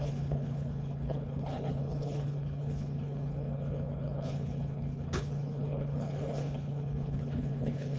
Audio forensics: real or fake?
fake